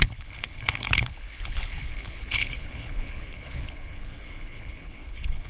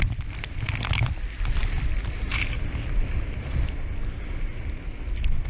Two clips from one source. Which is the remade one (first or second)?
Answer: first